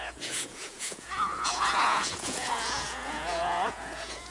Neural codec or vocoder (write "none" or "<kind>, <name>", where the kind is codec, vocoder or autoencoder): vocoder, Vocos